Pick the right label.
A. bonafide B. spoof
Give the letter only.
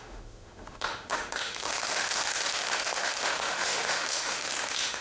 B